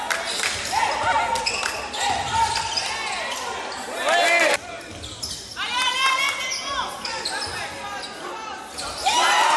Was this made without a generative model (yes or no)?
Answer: yes